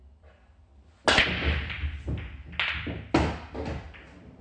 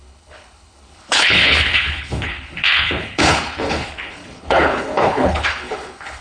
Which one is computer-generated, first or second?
second